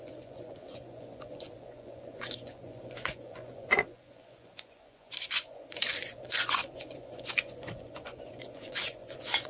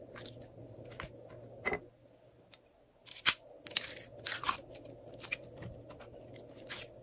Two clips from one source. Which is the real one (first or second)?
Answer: second